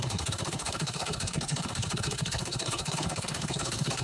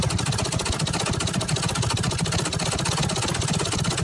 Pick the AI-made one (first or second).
first